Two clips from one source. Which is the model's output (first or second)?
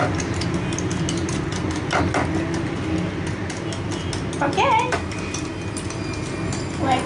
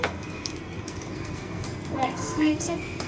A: second